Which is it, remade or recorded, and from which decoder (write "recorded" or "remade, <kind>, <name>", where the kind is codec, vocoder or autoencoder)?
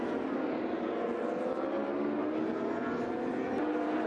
recorded